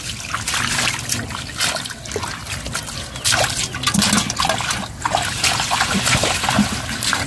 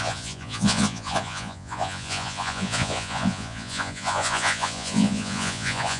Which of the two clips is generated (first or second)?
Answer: second